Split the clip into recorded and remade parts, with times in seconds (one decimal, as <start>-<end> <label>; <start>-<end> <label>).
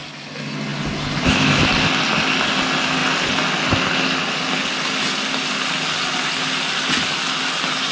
0.0-7.9 recorded